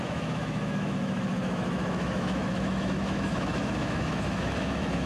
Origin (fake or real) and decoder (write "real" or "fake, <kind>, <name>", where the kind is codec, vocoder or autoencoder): fake, autoencoder, DAC-VAE